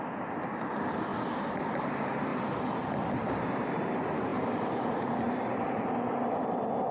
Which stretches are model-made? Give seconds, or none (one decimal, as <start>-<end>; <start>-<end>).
1.1-1.8; 2.3-3.8; 4.3-6.9